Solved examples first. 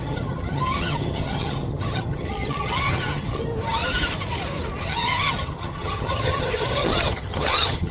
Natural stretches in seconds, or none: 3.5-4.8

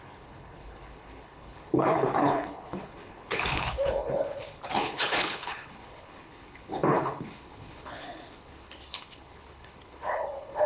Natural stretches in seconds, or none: none

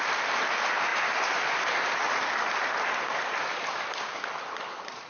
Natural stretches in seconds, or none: 0.0-5.1

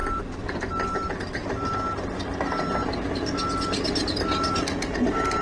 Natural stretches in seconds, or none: 0.0-5.4